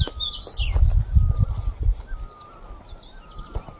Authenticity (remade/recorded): recorded